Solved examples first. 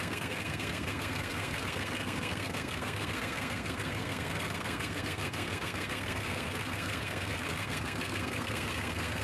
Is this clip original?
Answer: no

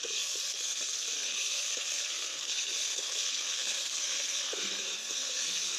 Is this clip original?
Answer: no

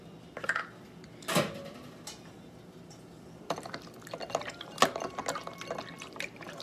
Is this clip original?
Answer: yes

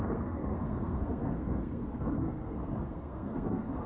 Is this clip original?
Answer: no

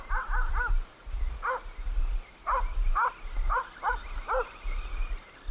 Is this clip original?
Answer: yes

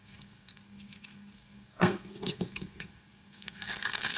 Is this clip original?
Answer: no